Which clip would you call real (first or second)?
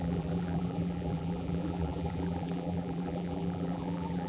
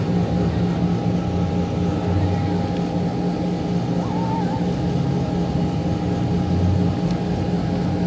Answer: second